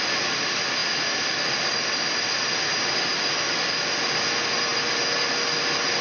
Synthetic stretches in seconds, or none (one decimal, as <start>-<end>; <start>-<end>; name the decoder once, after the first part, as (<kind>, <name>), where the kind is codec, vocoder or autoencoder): none